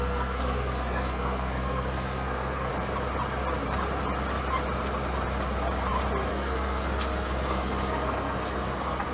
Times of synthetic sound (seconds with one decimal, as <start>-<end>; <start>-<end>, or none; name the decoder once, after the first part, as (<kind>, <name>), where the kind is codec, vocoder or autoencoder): 0.0-2.7 (codec, SNAC); 6.3-9.1